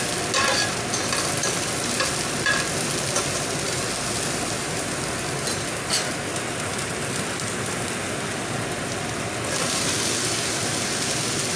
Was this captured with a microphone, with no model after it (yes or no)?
yes